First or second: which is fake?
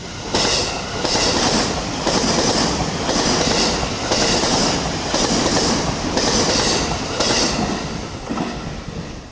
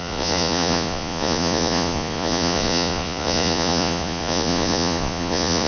second